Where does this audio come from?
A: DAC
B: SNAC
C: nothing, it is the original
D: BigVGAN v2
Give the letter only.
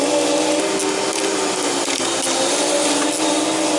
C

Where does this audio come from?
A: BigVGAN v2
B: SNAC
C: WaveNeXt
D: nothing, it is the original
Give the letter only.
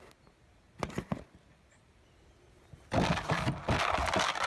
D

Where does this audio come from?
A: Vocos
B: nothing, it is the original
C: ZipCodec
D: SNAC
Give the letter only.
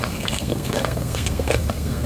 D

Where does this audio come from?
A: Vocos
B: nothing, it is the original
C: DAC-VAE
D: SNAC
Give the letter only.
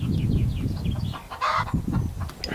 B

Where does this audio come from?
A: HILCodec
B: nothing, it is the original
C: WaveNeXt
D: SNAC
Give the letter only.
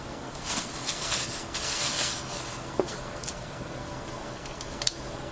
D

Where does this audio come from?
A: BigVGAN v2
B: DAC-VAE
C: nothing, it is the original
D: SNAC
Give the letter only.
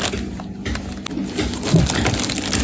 C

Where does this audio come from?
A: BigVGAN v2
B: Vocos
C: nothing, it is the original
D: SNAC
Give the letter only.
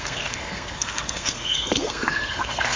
D